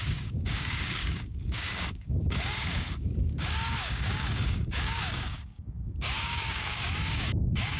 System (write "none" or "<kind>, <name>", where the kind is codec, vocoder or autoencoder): codec, DAC